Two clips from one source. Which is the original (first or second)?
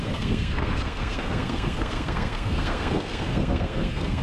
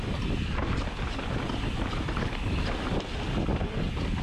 second